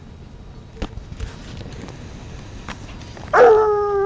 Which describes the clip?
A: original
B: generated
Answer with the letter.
A